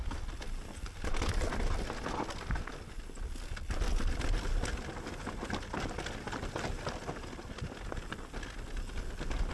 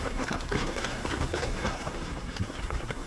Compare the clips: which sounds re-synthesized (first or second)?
second